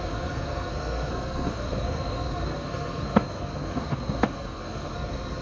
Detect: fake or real fake